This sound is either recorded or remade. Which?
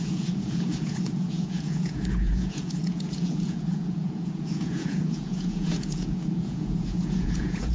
remade